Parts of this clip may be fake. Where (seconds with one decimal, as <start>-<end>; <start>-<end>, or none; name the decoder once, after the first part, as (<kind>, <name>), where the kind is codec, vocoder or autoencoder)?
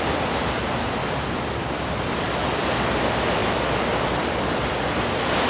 1.0-2.0 (vocoder, BigVGAN v2); 3.4-4.4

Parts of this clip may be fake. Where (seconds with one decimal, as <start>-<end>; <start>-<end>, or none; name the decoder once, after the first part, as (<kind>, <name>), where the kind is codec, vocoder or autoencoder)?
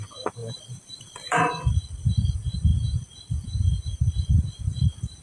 0.4-1.5 (vocoder, BigVGAN v2)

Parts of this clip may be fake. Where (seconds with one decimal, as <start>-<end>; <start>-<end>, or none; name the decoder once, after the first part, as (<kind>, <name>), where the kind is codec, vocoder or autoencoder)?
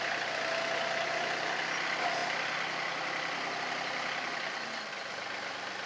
none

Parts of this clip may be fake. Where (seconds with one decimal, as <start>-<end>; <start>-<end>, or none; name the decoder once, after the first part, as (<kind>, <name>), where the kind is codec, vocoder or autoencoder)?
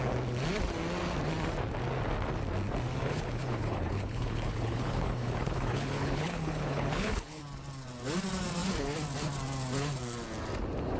3.0-7.4 (codec, HILCodec)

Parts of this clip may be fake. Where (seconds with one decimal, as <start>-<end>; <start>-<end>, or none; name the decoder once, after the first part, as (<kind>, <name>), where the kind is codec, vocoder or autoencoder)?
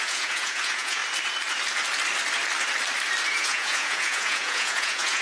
0.0-1.0 (vocoder, Vocos); 3.3-5.2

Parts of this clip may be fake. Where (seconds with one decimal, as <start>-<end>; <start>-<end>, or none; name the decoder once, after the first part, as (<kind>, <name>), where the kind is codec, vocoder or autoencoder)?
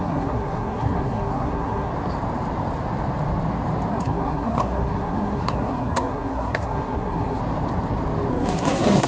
0.0-1.9 (codec, SNAC); 3.9-7.4; 8.3-9.1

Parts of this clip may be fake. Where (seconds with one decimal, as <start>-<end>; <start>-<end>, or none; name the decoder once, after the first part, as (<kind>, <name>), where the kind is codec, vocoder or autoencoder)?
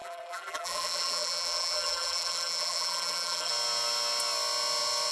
0.0-3.5 (vocoder, BigVGAN v2)